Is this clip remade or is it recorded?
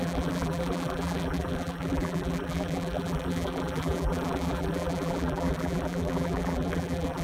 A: remade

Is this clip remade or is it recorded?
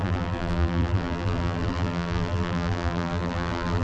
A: remade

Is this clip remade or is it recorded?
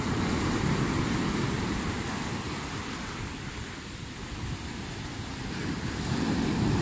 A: recorded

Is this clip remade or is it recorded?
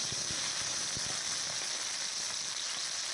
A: recorded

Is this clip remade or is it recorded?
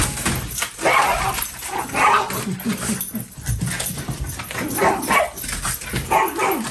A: recorded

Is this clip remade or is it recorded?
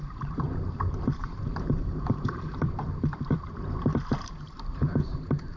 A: remade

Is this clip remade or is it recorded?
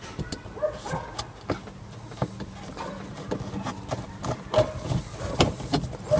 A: recorded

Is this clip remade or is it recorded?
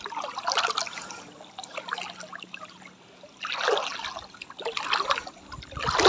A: recorded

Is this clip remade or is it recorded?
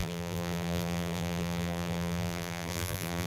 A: remade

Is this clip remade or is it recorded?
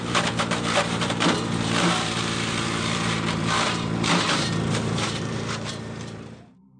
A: remade